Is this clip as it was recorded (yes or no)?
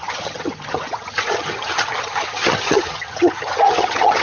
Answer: no